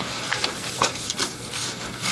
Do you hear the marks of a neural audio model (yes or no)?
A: yes